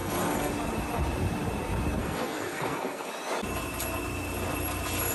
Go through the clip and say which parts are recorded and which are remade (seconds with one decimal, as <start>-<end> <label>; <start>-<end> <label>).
0.0-0.5 remade; 0.5-2.0 recorded; 2.0-3.1 remade; 3.1-5.1 recorded